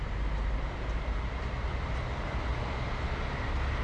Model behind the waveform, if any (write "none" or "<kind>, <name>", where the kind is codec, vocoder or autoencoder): none